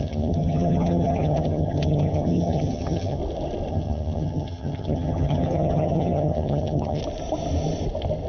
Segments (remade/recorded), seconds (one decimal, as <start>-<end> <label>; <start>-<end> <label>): 0.0-3.2 remade; 3.2-3.7 recorded; 3.7-7.0 remade; 7.0-8.3 recorded